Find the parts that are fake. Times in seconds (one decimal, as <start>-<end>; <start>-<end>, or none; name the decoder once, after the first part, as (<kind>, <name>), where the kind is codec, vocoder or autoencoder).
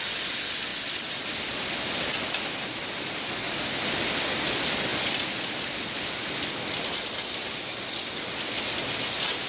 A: none